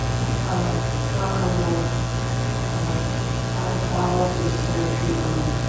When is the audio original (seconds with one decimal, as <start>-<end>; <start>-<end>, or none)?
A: 0.0-5.7